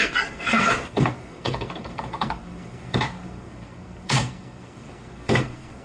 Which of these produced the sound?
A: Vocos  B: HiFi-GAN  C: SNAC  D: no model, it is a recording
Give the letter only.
C